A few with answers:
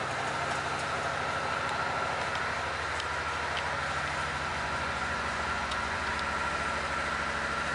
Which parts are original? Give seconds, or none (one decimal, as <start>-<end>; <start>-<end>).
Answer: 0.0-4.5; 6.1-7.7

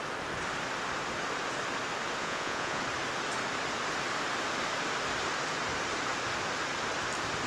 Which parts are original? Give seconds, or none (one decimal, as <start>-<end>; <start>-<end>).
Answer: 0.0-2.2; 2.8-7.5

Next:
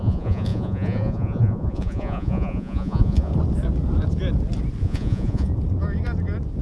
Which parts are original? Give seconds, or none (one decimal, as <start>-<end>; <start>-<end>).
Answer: 3.3-4.8; 5.5-6.6

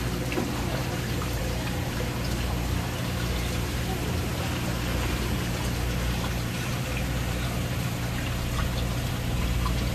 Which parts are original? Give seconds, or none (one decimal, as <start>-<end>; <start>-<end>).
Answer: 0.0-9.9